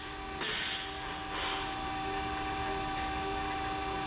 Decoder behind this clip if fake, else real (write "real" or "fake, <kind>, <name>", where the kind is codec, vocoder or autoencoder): real